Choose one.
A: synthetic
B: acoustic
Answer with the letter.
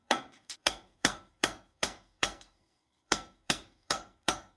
A